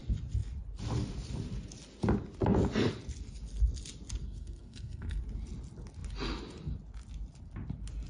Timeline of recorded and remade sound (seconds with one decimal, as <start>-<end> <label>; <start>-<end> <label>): 0.0-4.2 recorded; 4.2-5.2 remade; 5.2-8.1 recorded